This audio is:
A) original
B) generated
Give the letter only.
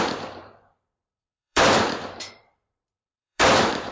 B